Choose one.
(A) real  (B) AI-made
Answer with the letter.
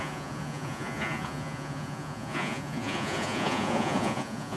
B